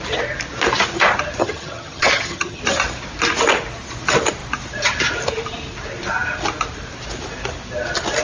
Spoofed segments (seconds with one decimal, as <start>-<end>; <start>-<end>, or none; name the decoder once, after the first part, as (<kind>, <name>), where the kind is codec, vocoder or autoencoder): 1.4-2.6 (vocoder, HiFi-GAN)